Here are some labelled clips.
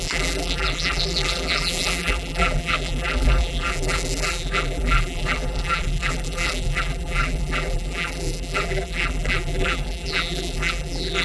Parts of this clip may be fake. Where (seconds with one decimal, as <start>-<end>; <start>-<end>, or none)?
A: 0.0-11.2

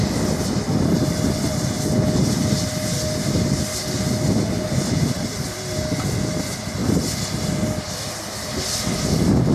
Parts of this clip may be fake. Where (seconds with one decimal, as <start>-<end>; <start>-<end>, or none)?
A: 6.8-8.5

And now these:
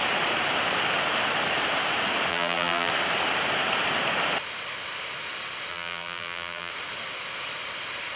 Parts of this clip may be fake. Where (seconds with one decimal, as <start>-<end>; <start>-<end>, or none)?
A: 2.3-2.9; 5.7-6.7

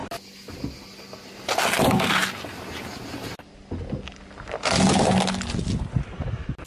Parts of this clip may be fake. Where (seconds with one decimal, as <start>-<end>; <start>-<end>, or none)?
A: none